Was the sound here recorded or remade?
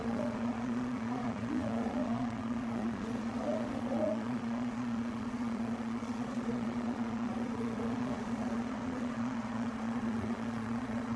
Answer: remade